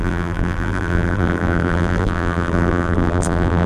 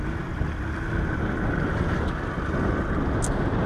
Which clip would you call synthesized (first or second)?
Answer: first